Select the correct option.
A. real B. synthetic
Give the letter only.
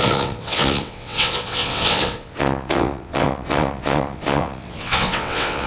B